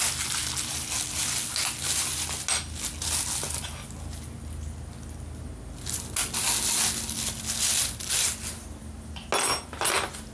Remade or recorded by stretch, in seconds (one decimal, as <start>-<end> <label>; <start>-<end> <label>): 0.0-10.3 recorded